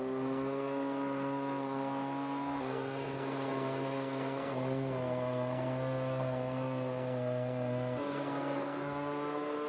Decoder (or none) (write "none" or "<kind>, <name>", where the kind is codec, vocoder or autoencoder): codec, SNAC